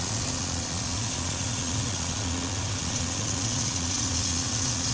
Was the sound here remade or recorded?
remade